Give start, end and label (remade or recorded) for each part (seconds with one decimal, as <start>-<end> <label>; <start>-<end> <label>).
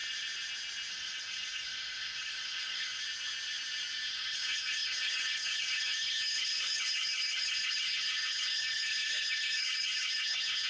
0.0-0.9 recorded; 0.9-3.0 remade; 3.0-4.1 recorded; 4.1-10.7 remade